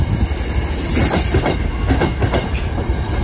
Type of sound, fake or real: real